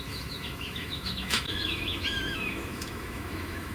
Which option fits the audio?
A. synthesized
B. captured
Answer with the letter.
A